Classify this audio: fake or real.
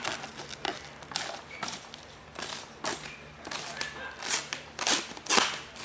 real